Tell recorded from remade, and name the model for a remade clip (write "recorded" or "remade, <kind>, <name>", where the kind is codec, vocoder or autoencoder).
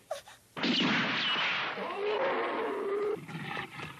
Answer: recorded